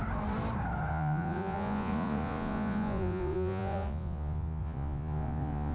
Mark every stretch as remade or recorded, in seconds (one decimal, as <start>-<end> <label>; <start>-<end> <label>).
0.0-0.9 recorded; 0.9-5.7 remade